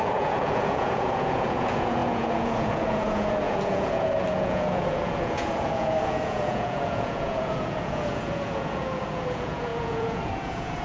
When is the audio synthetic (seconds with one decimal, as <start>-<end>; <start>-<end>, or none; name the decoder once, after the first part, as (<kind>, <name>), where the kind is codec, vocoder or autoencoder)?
0.0-10.8 (vocoder, Vocos)